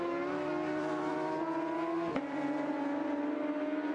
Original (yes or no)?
yes